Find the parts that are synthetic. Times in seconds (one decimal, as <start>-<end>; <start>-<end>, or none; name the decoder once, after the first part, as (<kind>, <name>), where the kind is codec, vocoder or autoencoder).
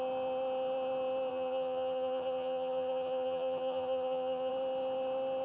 1.3-4.5 (vocoder, HiFi-GAN)